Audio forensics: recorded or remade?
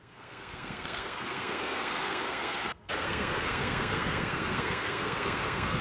remade